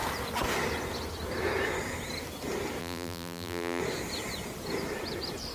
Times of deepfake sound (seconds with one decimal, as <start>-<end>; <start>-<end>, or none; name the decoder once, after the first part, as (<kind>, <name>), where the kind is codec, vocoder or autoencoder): 2.8-3.8 (vocoder, BigVGAN v2)